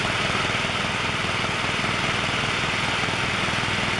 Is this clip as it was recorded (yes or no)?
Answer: yes